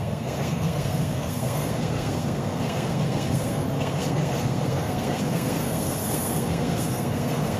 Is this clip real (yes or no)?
no